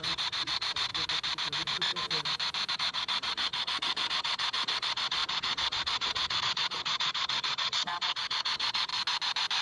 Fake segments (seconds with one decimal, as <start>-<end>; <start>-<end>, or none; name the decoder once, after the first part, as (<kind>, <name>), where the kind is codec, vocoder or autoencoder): 0.0-0.9 (vocoder, Vocos); 2.7-8.9